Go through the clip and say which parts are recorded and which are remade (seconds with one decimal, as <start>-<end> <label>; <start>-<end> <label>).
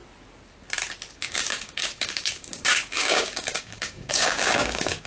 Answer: 0.0-1.1 recorded; 1.1-5.1 remade